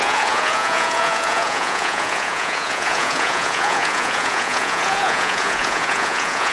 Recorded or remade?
remade